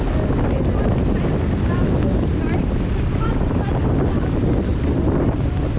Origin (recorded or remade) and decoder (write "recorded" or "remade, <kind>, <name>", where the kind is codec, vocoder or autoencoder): recorded